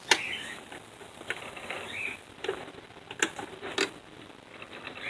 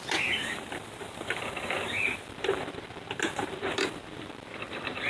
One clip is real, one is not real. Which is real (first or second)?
first